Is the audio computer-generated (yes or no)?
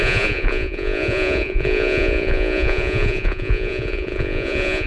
yes